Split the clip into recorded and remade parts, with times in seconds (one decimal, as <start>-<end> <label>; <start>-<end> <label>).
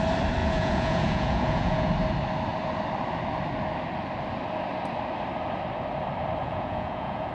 0.0-0.4 recorded; 0.4-1.9 remade; 1.9-6.4 recorded; 6.4-7.3 remade